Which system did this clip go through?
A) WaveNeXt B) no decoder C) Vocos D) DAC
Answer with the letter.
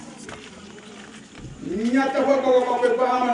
B